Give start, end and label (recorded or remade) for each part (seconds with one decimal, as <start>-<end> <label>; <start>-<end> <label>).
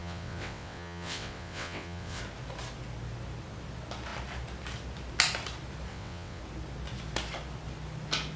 0.0-2.2 remade; 2.2-5.9 recorded; 5.9-6.4 remade; 6.4-8.4 recorded